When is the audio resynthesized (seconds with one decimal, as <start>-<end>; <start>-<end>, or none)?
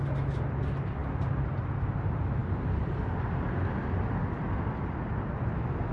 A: none